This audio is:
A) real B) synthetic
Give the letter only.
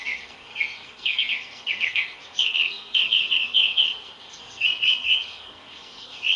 B